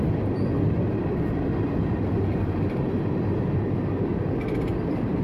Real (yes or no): no